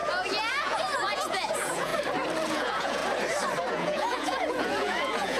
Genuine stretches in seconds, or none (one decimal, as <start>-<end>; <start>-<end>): 0.0-0.5; 1.9-2.5; 3.0-3.7